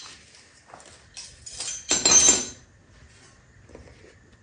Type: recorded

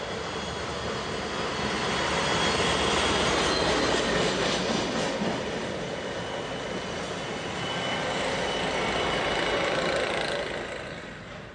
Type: recorded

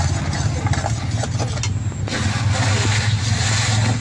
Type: recorded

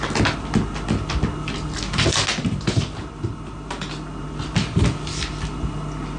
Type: recorded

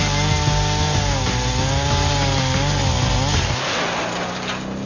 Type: recorded